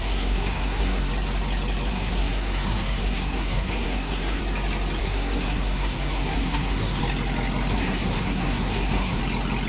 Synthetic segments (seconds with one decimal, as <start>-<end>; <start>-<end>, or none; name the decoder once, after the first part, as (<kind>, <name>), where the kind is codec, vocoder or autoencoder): 0.0-1.1 (codec, SNAC); 1.9-4.4; 5.0-7.0; 7.7-9.2